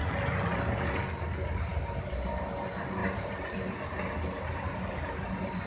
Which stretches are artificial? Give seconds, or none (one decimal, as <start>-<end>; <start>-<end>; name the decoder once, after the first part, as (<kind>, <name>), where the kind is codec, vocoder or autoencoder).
none